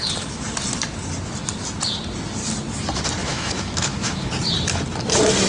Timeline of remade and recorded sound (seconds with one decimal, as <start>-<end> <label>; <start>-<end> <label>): 0.0-3.2 recorded; 3.2-4.3 remade; 4.3-5.5 recorded